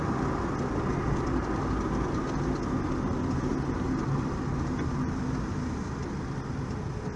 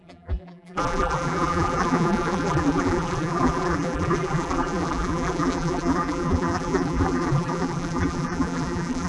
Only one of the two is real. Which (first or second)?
first